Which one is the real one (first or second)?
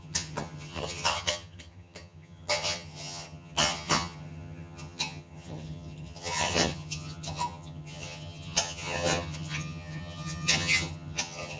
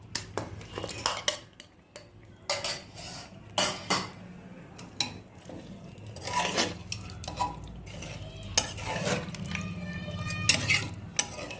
second